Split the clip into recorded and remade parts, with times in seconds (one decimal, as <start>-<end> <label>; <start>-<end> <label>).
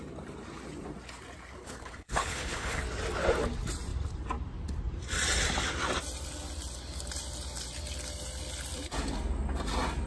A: 0.0-1.6 recorded; 1.6-2.8 remade; 2.8-10.1 recorded